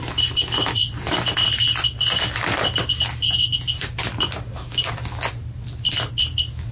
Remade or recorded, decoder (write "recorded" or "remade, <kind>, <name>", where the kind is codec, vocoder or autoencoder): recorded